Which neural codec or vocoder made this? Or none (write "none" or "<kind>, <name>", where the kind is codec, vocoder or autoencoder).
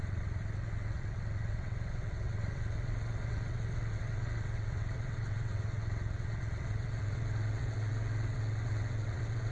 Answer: vocoder, WaveNeXt